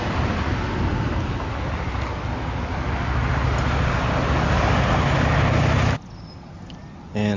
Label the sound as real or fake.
real